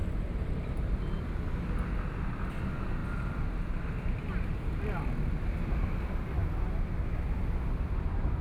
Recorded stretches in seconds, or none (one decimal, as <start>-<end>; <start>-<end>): 0.0-8.4